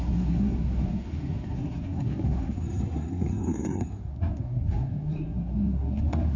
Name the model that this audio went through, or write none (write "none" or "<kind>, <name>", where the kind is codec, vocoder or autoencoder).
codec, SNAC